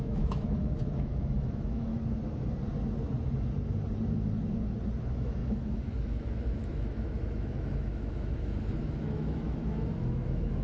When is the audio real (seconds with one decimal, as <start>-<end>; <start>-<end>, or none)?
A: 1.9-5.0